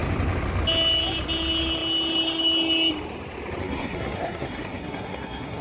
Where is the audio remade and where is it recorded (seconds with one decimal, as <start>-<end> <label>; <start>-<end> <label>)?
0.0-3.6 recorded; 3.6-5.6 remade